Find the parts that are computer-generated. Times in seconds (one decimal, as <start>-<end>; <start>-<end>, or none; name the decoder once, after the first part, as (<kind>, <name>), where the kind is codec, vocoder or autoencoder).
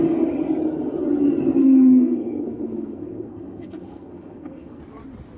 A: 1.6-4.8 (codec, SNAC)